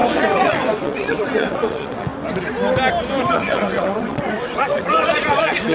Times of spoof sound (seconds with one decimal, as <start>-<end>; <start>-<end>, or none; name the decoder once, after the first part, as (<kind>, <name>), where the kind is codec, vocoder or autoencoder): 0.0-2.1 (vocoder, WaveNeXt); 3.3-5.7